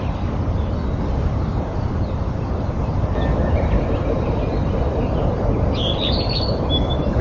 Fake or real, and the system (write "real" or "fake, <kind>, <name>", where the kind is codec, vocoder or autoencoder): real